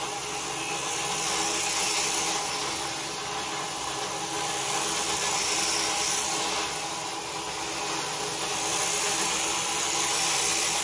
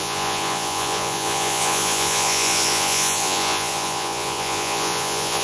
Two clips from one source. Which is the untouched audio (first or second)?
first